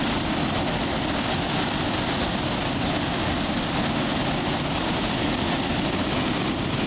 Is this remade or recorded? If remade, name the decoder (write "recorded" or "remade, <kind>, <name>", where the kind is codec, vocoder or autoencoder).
recorded